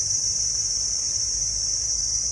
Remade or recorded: remade